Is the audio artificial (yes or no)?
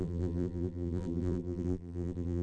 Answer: yes